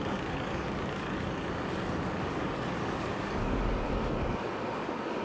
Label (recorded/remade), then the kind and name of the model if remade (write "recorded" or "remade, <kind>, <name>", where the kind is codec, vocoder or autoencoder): remade, codec, DAC